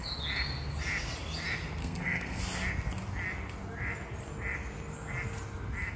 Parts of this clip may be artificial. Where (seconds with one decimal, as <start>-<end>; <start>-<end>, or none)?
1.8-2.4